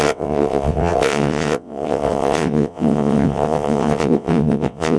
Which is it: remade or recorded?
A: remade